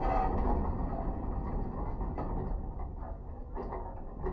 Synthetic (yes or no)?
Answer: no